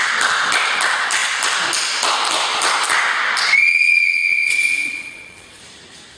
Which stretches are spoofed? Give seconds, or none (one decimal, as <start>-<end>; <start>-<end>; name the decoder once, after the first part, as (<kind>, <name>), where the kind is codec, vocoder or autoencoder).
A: 3.6-5.6 (vocoder, Vocos)